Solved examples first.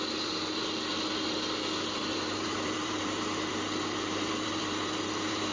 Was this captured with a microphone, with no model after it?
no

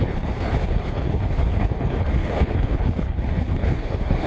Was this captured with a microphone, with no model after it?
no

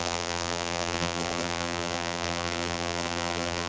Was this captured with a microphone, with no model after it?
no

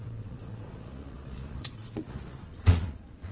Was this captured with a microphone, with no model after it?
no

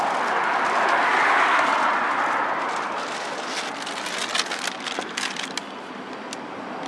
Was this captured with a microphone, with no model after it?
yes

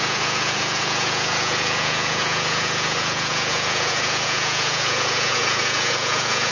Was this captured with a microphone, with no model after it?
no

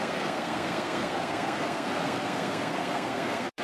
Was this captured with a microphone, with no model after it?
no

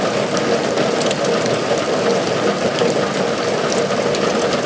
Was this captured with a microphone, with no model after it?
yes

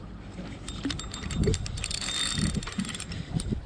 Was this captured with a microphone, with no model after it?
yes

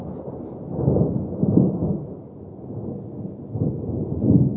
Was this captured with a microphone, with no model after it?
yes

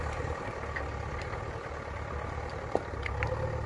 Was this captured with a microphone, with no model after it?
yes